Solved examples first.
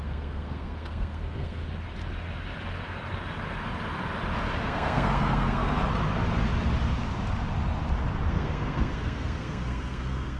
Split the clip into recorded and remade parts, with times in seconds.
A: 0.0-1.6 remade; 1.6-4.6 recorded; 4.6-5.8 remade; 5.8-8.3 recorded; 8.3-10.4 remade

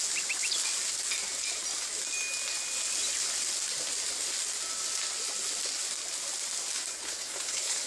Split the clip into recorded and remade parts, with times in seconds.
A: 0.0-7.0 recorded; 7.0-7.9 remade

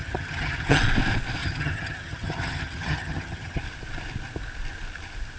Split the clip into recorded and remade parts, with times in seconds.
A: 0.0-0.8 remade; 0.8-1.4 recorded; 1.4-3.6 remade; 3.6-5.4 recorded